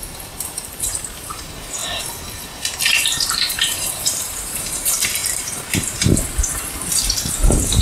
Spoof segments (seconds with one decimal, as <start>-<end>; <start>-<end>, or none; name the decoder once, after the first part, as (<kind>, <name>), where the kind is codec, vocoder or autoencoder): 0.0-1.8 (vocoder, BigVGAN v2); 2.5-7.8